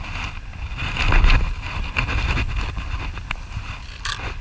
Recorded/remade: recorded